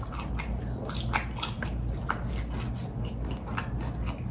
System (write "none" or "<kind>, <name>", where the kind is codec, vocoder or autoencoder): none